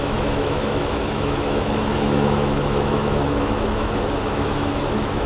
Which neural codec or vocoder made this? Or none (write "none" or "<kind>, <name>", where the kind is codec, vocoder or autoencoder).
autoencoder, DAC-VAE